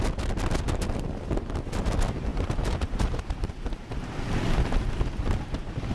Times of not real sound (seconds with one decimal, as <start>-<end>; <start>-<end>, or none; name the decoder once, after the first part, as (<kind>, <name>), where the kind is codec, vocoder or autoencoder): 2.3-3.5 (vocoder, BigVGAN v2)